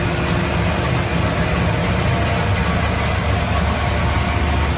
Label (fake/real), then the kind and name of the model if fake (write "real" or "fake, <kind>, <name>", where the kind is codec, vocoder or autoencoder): real